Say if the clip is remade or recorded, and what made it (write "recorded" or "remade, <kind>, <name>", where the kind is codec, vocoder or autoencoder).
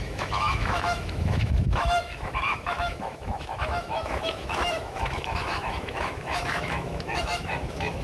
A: remade, autoencoder, DAC-VAE